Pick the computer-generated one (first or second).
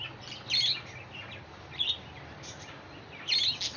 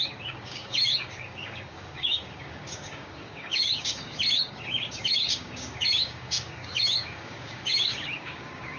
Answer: second